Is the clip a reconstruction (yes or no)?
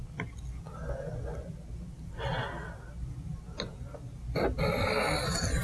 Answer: no